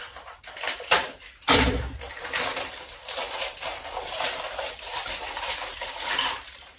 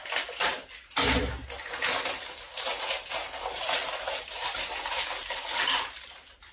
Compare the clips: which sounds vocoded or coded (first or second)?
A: first